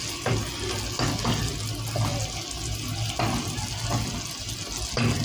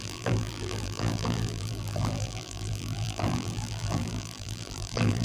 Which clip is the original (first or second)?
first